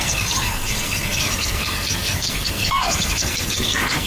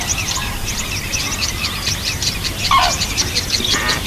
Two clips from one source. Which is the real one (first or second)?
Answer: second